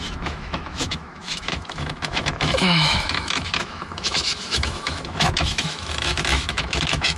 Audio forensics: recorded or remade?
remade